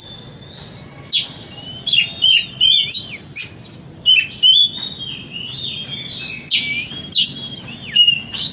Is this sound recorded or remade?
recorded